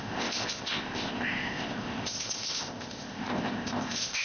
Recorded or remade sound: remade